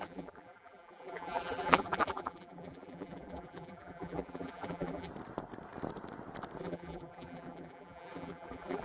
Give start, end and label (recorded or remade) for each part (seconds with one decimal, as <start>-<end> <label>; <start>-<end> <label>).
0.0-5.1 remade; 5.1-6.6 recorded; 6.6-8.8 remade